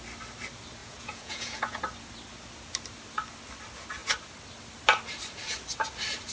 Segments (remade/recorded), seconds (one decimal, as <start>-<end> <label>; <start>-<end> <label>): 0.0-0.8 recorded; 0.8-1.8 remade; 1.8-6.3 recorded